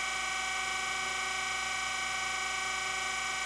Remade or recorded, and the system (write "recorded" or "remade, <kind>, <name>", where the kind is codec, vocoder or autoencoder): recorded